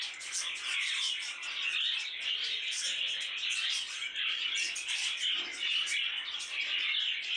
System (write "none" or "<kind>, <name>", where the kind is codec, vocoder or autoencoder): none